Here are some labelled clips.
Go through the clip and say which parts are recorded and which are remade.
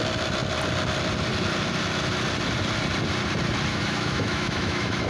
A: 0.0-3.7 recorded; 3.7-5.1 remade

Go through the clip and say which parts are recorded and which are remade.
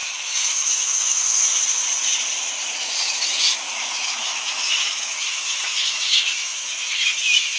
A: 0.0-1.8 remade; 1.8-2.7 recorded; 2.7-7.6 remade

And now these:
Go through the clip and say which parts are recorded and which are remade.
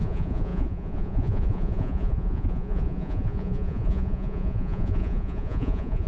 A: 0.0-6.1 remade